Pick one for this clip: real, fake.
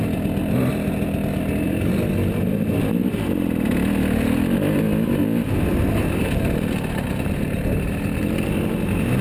real